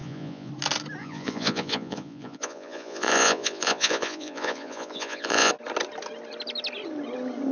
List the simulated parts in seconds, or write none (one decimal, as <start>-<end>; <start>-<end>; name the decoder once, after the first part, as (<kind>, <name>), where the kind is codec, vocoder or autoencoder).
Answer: 0.0-0.5 (vocoder, Vocos); 1.0-5.5